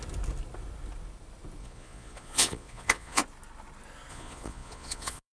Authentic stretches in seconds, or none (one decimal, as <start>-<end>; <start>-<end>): 0.0-1.6; 3.2-4.1